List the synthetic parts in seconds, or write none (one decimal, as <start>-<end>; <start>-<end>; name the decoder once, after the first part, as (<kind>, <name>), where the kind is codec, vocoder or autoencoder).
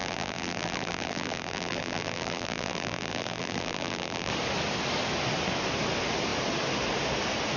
0.0-4.3 (vocoder, BigVGAN v2)